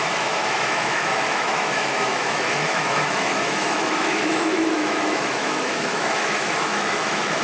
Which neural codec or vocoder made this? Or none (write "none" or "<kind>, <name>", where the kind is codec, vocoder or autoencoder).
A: autoencoder, DAC-VAE